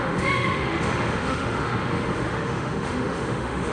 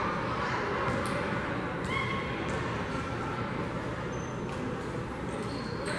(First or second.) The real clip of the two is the second